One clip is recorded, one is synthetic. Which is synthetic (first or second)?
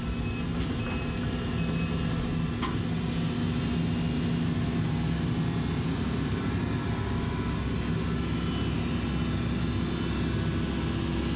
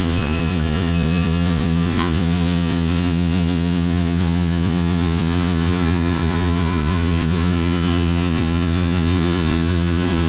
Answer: second